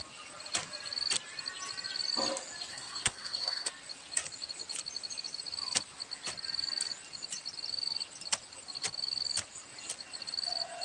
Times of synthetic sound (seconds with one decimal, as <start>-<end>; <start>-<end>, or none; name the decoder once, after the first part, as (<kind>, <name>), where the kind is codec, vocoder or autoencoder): 2.7-3.7 (codec, SNAC)